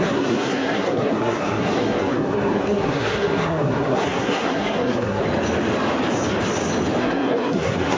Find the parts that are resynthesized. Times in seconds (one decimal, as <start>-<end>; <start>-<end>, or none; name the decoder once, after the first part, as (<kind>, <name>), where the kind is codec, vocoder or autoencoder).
0.0-5.2 (codec, SNAC); 7.0-8.0